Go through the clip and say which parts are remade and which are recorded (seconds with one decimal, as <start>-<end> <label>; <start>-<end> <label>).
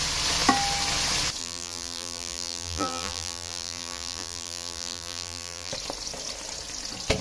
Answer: 0.0-1.4 recorded; 1.4-5.7 remade; 5.7-7.2 recorded